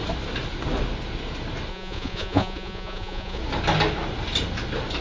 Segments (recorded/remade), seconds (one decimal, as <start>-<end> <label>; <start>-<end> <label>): 0.0-1.7 recorded; 1.7-3.4 remade; 3.4-5.0 recorded